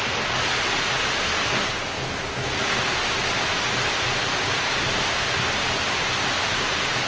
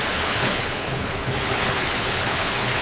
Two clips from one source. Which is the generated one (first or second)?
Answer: second